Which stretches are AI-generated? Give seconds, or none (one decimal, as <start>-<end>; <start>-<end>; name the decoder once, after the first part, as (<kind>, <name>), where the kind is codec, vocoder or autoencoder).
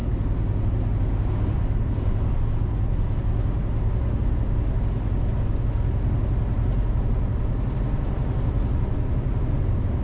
none